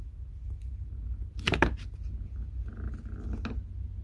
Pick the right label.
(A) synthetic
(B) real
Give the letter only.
B